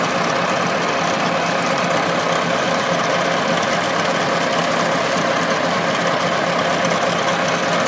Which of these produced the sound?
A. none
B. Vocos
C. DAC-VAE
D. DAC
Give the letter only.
A